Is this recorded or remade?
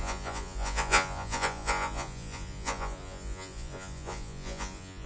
remade